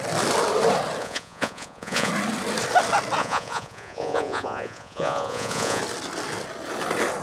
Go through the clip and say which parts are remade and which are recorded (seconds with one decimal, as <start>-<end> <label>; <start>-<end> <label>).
0.0-1.0 recorded; 1.0-2.1 remade; 2.1-3.2 recorded; 3.2-5.8 remade; 5.8-7.2 recorded